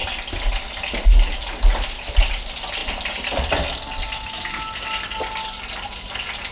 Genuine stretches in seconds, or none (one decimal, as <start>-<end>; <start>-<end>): 0.0-6.5